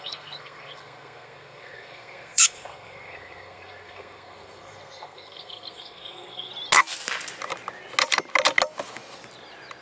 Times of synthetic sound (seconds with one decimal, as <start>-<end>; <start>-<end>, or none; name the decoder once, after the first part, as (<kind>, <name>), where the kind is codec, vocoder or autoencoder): 0.0-6.5 (codec, SNAC)